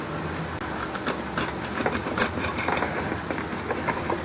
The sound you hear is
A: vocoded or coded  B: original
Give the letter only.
B